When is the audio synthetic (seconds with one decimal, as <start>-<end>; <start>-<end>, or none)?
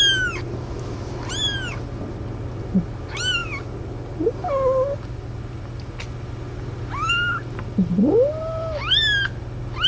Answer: none